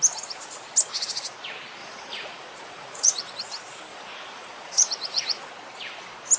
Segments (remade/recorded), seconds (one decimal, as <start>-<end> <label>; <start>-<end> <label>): 0.0-1.8 recorded; 1.8-3.3 remade; 3.3-3.9 recorded; 3.9-5.5 remade; 5.5-6.4 recorded